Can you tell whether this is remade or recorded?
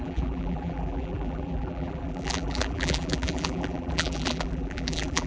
remade